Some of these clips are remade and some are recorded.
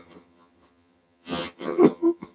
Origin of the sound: remade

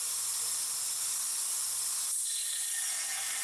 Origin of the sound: recorded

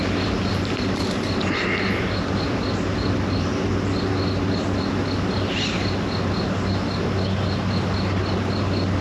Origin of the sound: recorded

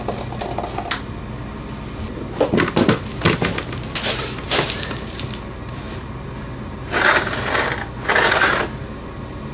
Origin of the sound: recorded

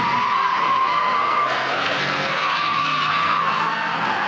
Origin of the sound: remade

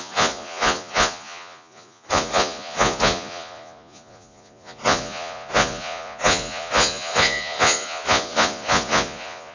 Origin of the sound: remade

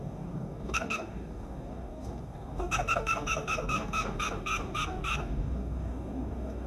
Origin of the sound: remade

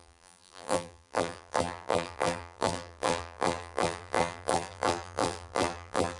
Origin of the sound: remade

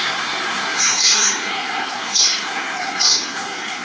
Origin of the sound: remade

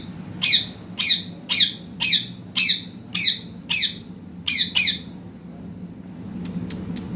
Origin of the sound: recorded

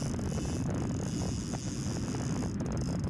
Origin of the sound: recorded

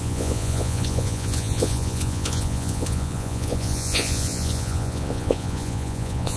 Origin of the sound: remade